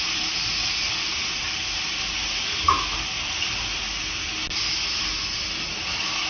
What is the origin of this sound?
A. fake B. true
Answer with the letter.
B